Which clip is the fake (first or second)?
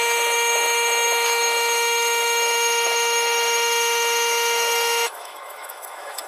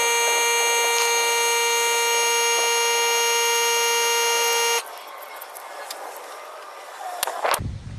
first